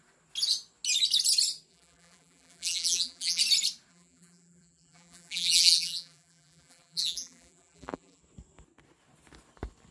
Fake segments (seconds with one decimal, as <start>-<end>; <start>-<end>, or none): 1.7-3.4; 3.9-8.2